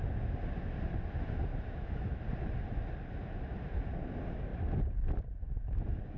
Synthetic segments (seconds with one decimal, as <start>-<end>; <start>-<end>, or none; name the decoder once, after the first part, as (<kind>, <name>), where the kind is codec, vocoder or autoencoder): 1.5-2.2 (autoencoder, DAC-VAE)